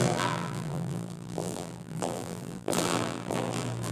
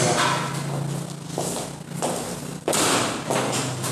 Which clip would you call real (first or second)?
second